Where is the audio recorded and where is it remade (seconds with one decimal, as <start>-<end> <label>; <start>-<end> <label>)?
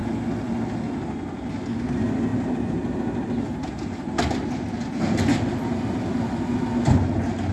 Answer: 0.0-0.6 remade; 0.6-7.5 recorded